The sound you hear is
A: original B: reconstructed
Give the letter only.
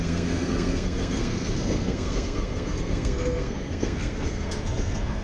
B